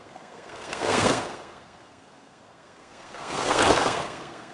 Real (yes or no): no